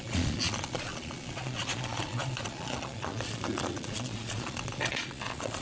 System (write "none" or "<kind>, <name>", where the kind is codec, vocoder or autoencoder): vocoder, Vocos